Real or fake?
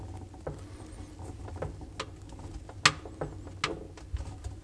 real